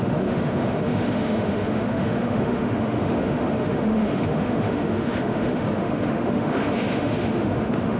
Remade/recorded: remade